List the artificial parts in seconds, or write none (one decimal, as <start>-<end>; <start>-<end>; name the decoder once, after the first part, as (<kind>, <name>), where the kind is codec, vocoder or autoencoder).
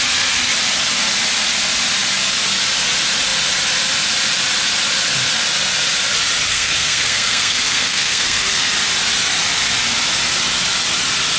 6.5-8.7 (codec, SNAC)